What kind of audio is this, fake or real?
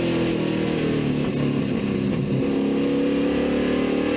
real